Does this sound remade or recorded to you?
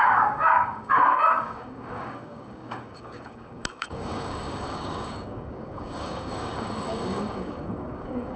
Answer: remade